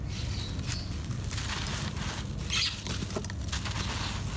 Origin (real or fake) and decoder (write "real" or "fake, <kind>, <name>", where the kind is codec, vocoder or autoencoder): real